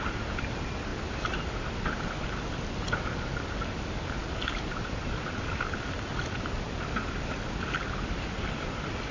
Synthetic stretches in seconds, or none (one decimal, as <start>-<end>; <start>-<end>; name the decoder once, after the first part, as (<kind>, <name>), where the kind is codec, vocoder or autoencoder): none